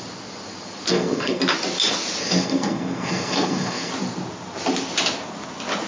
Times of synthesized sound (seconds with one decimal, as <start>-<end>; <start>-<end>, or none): 0.9-1.4; 2.2-3.9